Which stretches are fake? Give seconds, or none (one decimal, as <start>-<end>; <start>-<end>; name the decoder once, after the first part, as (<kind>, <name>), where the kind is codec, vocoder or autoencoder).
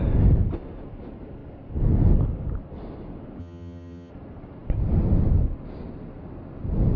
3.4-4.1 (vocoder, HiFi-GAN)